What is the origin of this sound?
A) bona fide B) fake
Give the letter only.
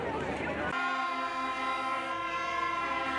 A